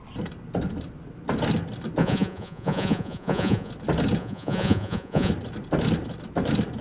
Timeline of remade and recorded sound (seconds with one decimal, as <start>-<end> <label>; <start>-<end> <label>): 0.0-2.0 recorded; 2.0-3.7 remade; 3.7-4.2 recorded; 4.2-5.3 remade; 5.3-6.8 recorded